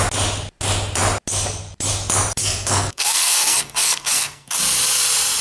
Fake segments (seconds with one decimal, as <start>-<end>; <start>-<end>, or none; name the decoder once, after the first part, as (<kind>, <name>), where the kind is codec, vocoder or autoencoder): 2.4-4.6 (codec, SNAC)